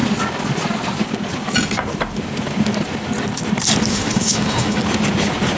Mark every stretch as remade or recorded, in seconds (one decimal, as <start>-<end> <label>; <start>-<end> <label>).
0.0-3.9 recorded; 3.9-4.8 remade; 4.8-5.6 recorded